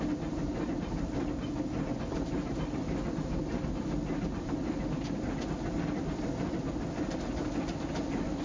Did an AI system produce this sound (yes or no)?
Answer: no